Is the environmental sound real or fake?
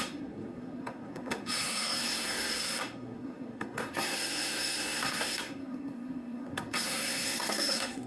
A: fake